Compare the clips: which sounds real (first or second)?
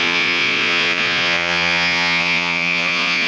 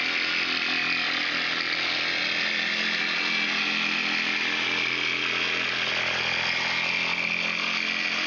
second